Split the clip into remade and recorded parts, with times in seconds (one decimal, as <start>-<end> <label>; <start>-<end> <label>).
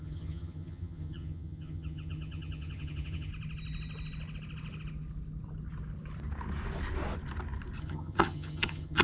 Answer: 0.0-3.3 remade; 3.3-7.8 recorded; 7.8-9.0 remade